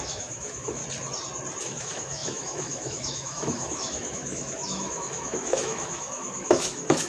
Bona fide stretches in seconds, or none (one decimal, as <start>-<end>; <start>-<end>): 0.8-1.6